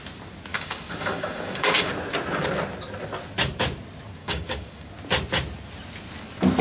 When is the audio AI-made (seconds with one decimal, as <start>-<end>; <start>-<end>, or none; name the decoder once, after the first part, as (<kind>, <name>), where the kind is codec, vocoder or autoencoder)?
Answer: 0.5-1.9 (codec, DAC); 4.2-4.9